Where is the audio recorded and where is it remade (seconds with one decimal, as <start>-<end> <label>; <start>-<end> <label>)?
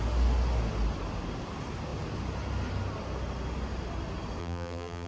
0.0-4.4 recorded; 4.4-5.1 remade